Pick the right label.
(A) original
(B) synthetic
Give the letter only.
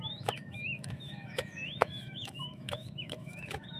B